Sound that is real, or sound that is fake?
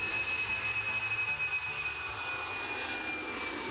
real